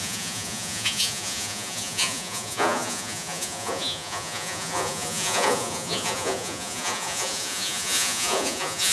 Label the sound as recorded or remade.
remade